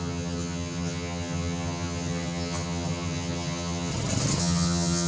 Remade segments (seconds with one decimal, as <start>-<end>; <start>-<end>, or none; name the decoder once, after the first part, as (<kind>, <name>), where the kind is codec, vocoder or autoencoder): 0.0-3.9 (vocoder, HiFi-GAN); 4.4-5.1